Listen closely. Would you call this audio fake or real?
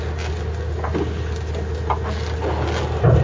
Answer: real